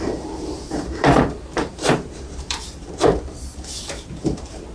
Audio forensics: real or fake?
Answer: fake